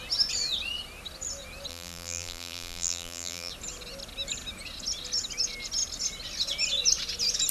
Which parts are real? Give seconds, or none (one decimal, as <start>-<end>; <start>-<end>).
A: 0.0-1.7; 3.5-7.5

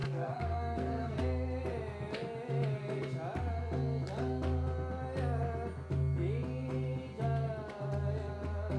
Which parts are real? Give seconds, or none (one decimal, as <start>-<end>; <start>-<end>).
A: 1.2-8.8

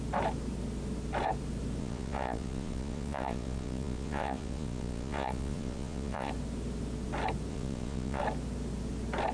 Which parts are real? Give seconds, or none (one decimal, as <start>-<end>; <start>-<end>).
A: 0.0-1.8; 6.3-7.5; 8.2-9.3

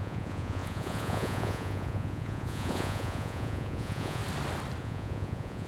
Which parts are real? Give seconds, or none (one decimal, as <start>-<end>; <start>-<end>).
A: 4.2-4.8

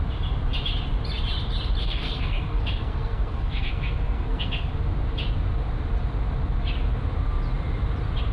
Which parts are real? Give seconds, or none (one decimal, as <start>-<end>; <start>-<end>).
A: 0.0-1.8; 4.7-8.3

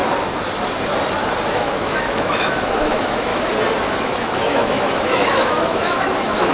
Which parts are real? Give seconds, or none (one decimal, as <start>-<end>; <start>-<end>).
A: 0.0-1.5; 3.3-3.8

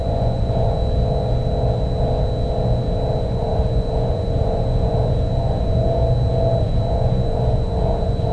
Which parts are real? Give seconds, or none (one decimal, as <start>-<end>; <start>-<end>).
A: 0.8-3.2; 6.0-6.6

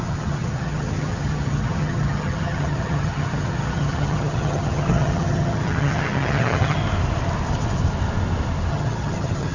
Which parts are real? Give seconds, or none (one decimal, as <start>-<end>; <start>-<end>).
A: 6.8-8.7